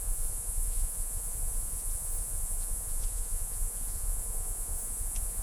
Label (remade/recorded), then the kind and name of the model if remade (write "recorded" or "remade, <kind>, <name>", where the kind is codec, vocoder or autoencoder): remade, vocoder, Vocos